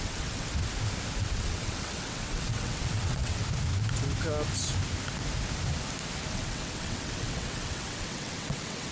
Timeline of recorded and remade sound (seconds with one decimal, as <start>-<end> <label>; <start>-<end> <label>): 0.0-0.5 remade; 0.5-1.2 recorded; 1.2-3.4 remade; 3.4-6.3 recorded; 6.3-8.9 remade